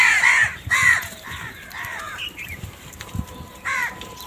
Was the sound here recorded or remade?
remade